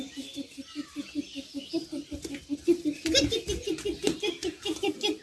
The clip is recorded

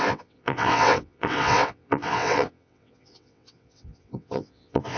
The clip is remade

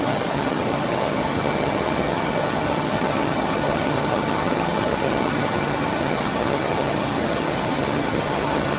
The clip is remade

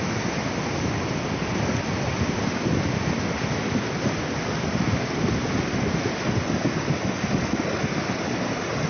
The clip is recorded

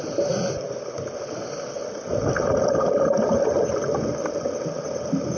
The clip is recorded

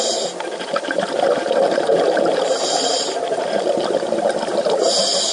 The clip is recorded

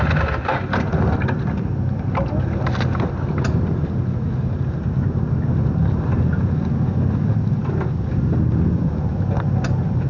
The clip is recorded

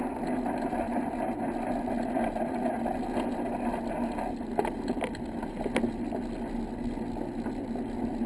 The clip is recorded